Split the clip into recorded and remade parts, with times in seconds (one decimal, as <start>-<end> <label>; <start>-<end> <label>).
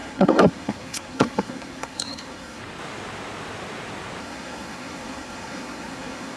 0.0-2.6 remade; 2.6-4.2 recorded; 4.2-6.4 remade